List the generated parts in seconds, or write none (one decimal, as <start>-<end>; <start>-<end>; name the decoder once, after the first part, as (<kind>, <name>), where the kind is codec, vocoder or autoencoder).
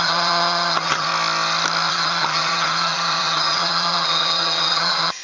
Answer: 0.0-1.1 (vocoder, HiFi-GAN); 1.9-5.2